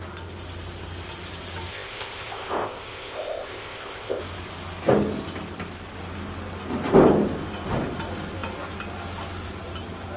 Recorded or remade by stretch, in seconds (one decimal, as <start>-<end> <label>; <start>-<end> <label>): 0.0-1.7 recorded; 1.7-4.2 remade; 4.2-10.2 recorded